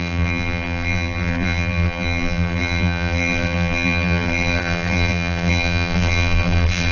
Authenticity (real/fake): fake